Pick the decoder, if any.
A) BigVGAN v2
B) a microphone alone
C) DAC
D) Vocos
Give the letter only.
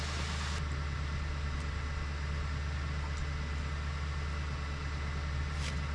B